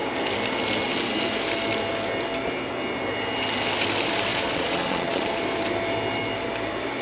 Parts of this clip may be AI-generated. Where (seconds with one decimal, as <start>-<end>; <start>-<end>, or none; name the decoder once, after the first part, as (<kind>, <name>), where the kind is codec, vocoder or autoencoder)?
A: 4.3-5.3 (vocoder, Vocos)